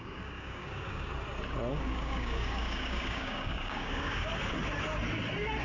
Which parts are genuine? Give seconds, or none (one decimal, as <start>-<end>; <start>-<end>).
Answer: 1.1-1.7; 4.3-5.6